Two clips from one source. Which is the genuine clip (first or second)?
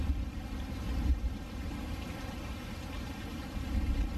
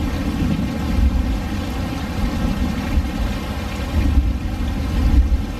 second